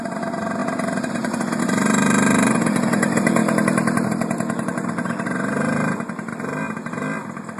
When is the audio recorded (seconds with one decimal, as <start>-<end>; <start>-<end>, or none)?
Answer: 3.4-4.1; 6.3-7.6